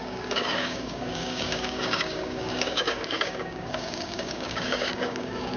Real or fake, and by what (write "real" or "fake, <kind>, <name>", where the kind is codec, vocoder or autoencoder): fake, codec, DAC